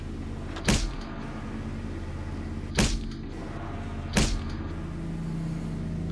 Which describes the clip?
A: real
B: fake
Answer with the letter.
A